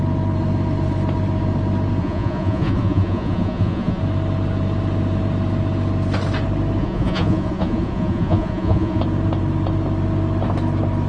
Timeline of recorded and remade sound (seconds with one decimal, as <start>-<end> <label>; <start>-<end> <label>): 0.0-2.0 recorded; 2.0-4.0 remade; 4.0-6.8 recorded; 6.8-9.0 remade; 9.0-11.1 recorded